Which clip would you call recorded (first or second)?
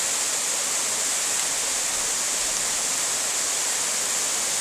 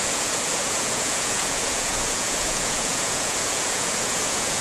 first